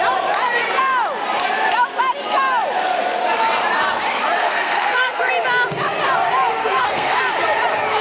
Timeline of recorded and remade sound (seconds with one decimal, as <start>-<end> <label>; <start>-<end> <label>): 0.0-4.4 recorded; 4.4-5.3 remade; 5.3-6.6 recorded; 6.6-7.2 remade; 7.2-8.0 recorded